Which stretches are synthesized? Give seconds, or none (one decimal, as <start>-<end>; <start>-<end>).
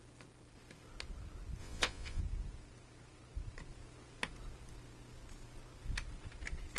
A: 1.6-2.2